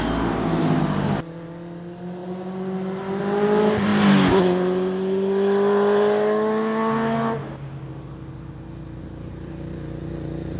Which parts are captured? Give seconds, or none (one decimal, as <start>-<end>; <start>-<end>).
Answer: 0.0-7.4; 7.9-10.6